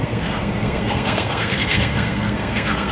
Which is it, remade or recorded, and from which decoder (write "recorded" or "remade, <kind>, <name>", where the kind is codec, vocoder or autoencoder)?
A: remade, codec, SNAC